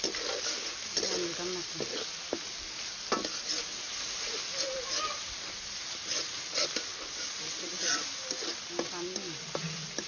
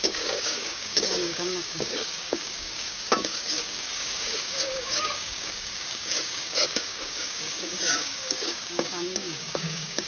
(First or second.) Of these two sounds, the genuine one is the first